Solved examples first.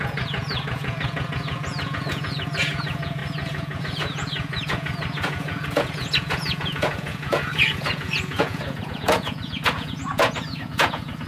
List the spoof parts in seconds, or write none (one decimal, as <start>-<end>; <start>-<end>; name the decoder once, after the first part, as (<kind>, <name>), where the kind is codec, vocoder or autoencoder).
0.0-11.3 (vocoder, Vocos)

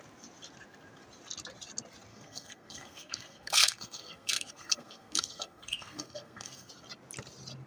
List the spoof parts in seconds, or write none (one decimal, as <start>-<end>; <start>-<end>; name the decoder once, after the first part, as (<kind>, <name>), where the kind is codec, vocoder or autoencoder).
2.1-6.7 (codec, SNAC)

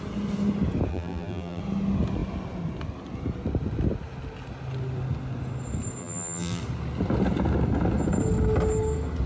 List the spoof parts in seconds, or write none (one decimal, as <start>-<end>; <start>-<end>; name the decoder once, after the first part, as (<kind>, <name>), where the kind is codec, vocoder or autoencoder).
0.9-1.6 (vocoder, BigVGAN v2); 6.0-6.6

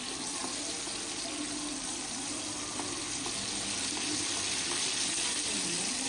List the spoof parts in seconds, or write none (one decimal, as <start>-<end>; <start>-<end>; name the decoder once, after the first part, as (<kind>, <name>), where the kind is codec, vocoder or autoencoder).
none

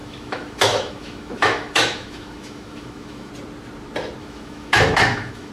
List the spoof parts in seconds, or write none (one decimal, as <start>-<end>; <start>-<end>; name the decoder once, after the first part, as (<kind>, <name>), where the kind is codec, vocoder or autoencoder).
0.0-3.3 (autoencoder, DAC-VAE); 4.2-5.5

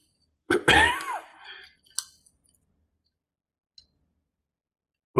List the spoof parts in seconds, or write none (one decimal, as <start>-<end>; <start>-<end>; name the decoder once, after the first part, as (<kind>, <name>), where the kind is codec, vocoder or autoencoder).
0.0-0.9 (vocoder, BigVGAN v2)

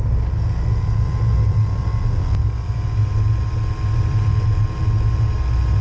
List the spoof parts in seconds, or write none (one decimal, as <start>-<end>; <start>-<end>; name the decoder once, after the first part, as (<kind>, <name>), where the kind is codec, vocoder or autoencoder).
none

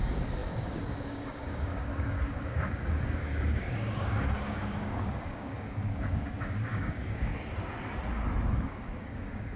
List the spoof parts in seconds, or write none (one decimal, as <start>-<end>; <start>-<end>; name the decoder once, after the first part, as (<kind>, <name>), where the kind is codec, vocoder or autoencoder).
0.0-7.3 (codec, DAC); 8.5-9.6